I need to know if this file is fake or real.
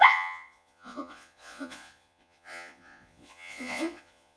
fake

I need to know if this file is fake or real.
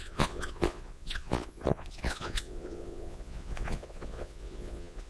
fake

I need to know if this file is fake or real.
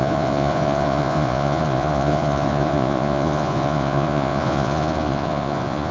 fake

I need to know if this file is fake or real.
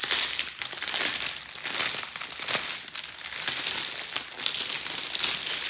real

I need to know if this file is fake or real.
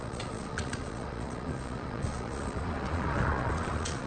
fake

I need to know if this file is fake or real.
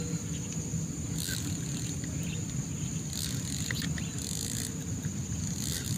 real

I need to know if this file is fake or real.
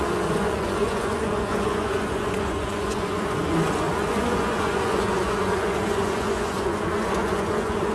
fake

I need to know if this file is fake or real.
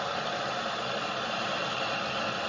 real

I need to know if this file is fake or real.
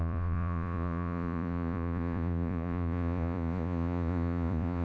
fake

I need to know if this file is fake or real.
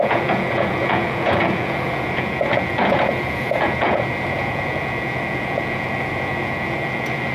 fake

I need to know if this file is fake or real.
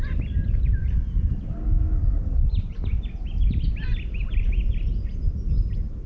real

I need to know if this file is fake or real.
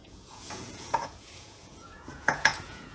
fake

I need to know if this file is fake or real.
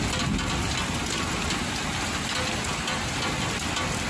real